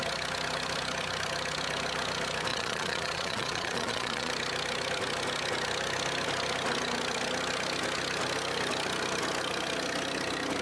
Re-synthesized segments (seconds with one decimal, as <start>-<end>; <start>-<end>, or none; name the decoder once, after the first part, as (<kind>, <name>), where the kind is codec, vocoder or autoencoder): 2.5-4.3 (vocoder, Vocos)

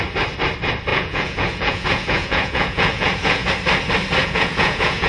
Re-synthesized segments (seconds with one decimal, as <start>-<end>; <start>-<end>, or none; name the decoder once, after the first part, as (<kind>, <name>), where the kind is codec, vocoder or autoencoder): 0.9-3.5 (vocoder, Vocos); 4.2-5.1

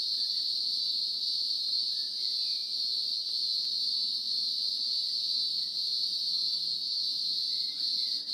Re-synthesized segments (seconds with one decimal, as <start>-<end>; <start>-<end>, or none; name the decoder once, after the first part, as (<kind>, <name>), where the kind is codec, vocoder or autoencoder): none

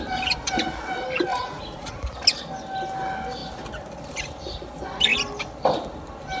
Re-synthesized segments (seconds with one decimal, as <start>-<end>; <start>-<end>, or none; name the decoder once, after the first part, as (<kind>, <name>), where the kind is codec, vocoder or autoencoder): 1.3-1.9 (vocoder, Vocos)

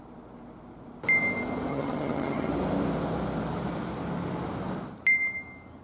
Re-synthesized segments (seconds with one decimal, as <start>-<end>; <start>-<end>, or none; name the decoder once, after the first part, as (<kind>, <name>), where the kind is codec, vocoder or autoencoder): 1.7-2.5 (vocoder, HiFi-GAN)

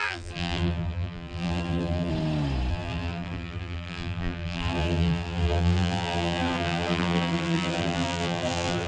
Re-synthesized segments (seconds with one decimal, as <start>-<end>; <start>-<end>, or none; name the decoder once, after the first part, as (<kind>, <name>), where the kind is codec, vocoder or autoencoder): 0.0-2.1 (vocoder, BigVGAN v2); 2.7-8.9